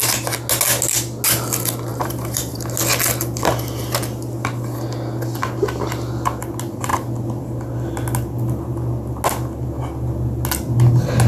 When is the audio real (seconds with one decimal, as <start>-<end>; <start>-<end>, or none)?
0.0-1.9; 2.7-11.3